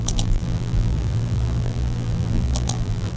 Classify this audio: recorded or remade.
remade